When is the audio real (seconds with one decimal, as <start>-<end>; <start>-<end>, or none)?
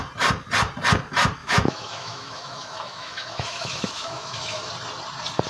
0.0-1.4; 4.7-5.5